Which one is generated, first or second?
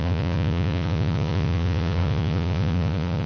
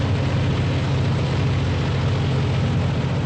first